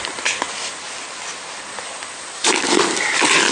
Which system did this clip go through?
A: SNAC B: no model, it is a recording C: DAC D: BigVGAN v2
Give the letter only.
B